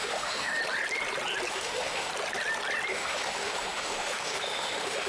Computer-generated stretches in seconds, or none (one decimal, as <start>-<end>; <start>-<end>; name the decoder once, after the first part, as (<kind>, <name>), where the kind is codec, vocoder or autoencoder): 0.0-0.6 (autoencoder, DAC-VAE); 1.5-2.1; 2.9-5.1